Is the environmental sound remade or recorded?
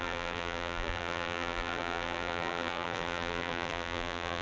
remade